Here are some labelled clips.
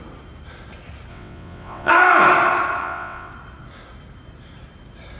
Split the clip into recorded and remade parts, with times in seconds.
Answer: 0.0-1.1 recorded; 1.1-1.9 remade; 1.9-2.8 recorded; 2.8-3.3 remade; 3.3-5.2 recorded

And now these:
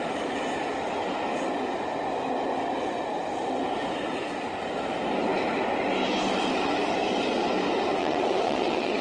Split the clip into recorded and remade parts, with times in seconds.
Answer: 0.0-8.0 recorded; 8.0-9.0 remade